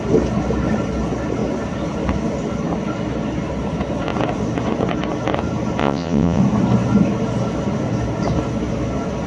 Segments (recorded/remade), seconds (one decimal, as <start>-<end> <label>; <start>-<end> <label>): 0.0-5.8 recorded; 5.8-6.4 remade; 6.4-9.3 recorded